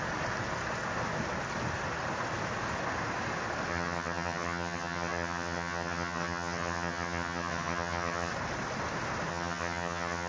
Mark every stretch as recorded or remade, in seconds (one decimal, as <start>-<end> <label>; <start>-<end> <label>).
0.0-3.7 recorded; 3.7-8.3 remade; 8.3-9.3 recorded; 9.3-10.3 remade